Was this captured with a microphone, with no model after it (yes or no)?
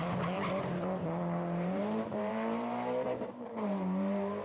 no